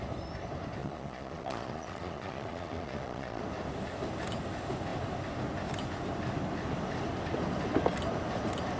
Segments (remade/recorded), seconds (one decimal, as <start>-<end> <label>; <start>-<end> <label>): 0.0-0.8 recorded; 0.8-3.4 remade; 3.4-8.8 recorded